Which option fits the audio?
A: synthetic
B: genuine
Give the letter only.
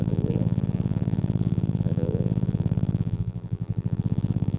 A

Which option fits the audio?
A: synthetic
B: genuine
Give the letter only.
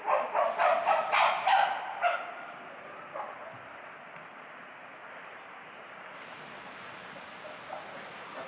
B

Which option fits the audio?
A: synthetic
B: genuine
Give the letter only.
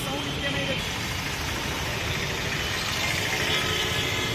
B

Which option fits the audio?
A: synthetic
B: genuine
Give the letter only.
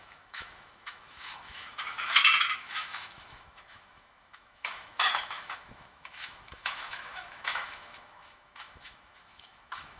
A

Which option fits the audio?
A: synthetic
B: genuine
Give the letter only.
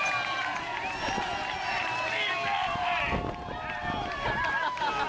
B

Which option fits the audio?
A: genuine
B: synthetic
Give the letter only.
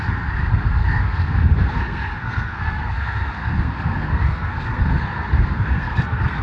B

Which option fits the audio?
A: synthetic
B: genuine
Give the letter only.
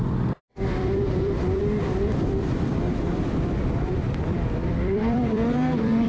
A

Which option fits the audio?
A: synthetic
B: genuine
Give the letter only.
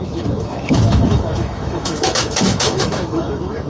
A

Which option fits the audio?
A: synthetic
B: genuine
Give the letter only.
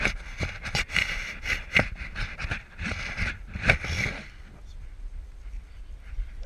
B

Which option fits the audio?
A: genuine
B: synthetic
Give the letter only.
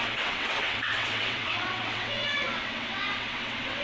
B